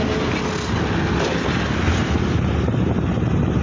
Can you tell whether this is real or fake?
real